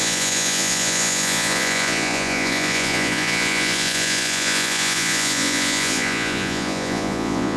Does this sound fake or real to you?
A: fake